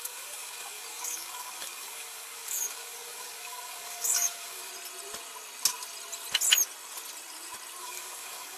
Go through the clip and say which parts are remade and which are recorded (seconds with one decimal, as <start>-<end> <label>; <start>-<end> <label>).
0.0-4.7 remade; 4.7-7.8 recorded; 7.8-8.6 remade